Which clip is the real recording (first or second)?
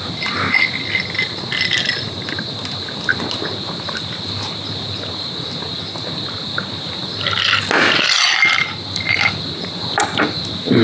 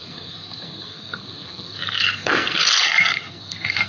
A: first